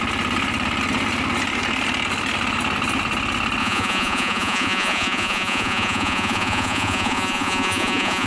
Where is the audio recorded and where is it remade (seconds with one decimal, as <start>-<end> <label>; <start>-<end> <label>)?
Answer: 0.0-3.6 recorded; 3.6-8.3 remade